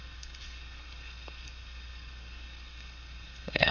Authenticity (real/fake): fake